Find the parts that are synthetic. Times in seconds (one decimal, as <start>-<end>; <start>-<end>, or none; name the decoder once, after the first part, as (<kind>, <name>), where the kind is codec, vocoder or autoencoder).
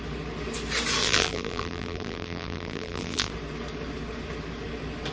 1.0-3.3 (vocoder, BigVGAN v2)